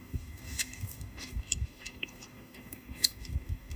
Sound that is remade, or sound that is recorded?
remade